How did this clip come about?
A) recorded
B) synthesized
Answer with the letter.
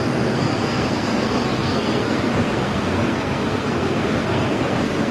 B